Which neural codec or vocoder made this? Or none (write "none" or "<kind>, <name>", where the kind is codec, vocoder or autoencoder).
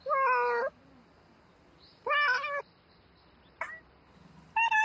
none